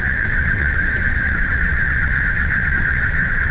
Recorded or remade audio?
remade